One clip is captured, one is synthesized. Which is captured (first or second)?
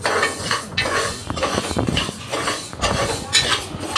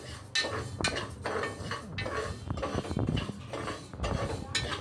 second